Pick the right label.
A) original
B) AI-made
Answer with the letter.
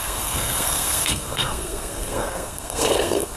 B